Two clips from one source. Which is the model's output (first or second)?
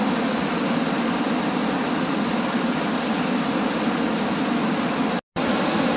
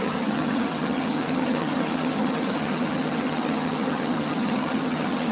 second